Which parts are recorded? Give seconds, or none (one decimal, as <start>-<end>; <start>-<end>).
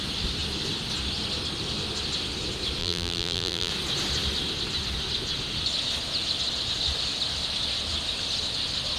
0.0-2.8; 3.7-9.0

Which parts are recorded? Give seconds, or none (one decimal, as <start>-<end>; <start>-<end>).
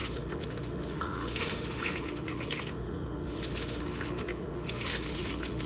none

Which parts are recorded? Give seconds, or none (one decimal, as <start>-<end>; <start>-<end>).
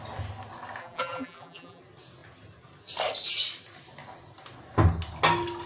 0.0-0.8; 1.8-5.7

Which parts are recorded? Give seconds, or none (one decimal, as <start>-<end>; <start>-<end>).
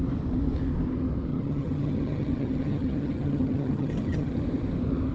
0.0-1.3; 4.4-5.1